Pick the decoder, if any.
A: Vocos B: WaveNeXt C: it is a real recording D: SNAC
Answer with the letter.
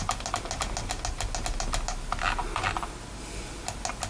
C